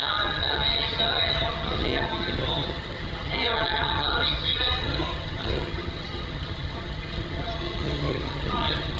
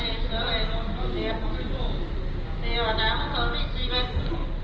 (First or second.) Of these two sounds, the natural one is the second